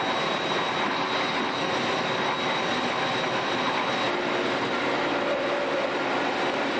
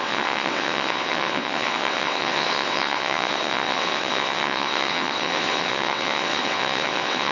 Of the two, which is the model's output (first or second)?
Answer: second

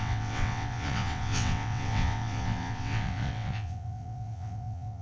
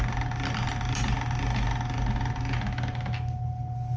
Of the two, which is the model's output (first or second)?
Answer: first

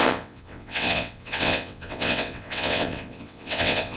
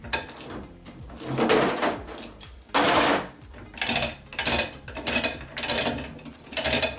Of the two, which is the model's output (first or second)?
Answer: first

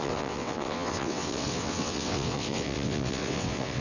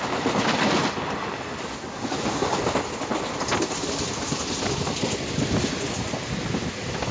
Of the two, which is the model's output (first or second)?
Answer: first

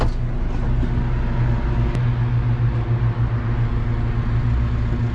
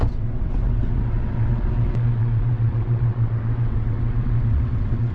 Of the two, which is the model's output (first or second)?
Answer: second